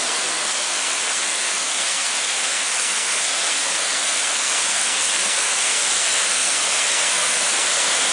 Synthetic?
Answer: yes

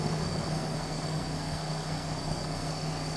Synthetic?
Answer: yes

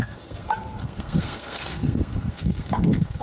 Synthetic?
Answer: yes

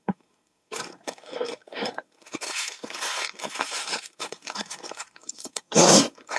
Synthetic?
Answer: yes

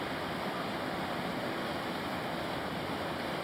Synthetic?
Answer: no